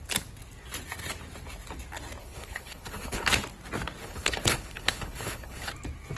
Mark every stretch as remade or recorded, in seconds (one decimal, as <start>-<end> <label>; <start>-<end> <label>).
0.0-2.2 recorded; 2.2-3.3 remade; 3.3-4.0 recorded; 4.0-5.7 remade; 5.7-6.2 recorded